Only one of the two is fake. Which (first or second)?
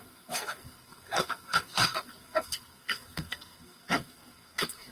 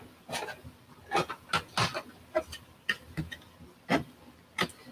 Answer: first